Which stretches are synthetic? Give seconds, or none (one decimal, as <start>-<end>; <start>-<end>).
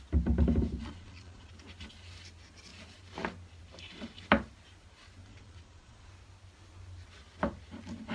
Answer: 0.8-1.5; 5.3-6.1